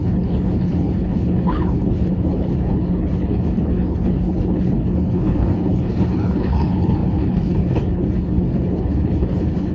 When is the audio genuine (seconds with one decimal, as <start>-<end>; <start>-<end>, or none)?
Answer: none